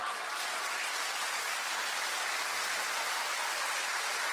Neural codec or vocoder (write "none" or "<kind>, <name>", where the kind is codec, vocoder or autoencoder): none